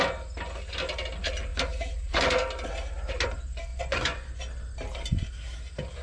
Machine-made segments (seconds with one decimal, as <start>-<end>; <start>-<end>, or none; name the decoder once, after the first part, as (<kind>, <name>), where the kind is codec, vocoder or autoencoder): 3.7-4.4 (vocoder, Vocos)